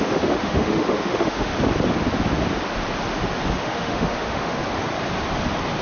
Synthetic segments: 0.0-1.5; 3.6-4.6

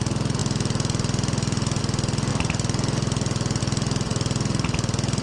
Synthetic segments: none

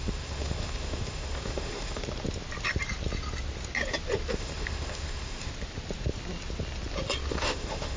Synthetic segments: 0.0-2.0; 4.3-5.5; 7.3-8.0

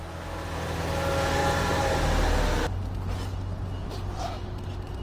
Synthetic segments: none

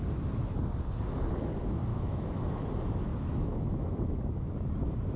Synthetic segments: 1.9-2.7; 3.1-4.7

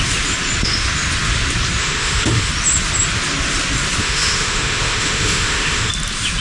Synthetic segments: 1.8-2.5; 4.0-5.9

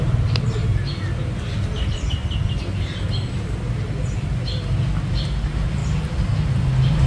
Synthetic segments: none